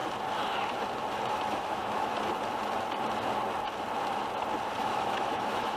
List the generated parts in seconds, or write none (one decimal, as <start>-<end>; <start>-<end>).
1.3-2.2; 4.8-5.8

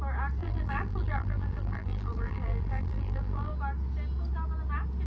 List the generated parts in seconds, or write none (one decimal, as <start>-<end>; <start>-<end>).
0.4-3.5

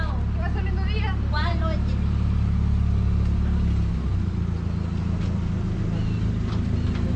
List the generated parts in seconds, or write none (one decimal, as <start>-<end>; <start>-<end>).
none

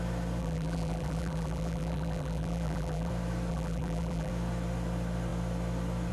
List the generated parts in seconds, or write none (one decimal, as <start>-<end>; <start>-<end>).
0.4-3.1; 3.5-4.3